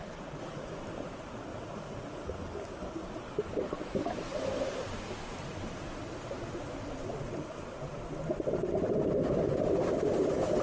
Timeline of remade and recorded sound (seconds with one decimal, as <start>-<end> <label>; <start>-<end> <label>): 0.0-0.7 remade; 0.7-1.5 recorded; 1.5-2.3 remade; 2.3-10.6 recorded